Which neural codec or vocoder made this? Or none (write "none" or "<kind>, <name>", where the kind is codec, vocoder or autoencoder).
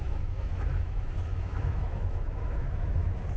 autoencoder, DAC-VAE